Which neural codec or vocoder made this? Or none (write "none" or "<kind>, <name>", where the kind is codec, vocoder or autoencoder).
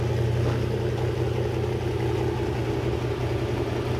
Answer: none